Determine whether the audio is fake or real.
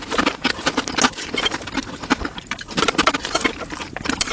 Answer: real